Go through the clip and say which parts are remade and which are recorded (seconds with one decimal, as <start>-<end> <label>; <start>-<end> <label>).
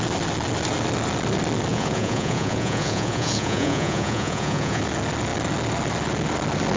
0.0-1.7 recorded; 1.7-4.8 remade; 4.8-6.8 recorded